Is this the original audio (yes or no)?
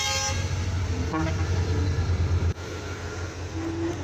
yes